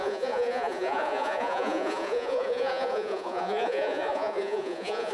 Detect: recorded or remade remade